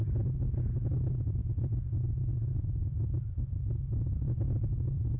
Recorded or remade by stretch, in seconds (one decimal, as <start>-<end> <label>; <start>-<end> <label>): 0.0-5.2 recorded